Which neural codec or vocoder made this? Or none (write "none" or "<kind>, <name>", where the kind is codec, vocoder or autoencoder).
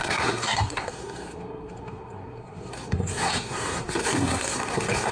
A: codec, SNAC